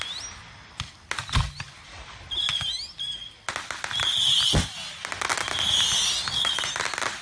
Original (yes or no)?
yes